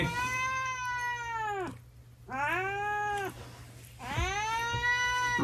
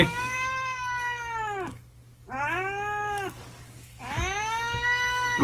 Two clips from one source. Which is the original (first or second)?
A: first